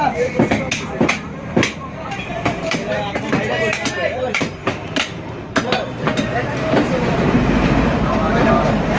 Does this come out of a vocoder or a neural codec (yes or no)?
yes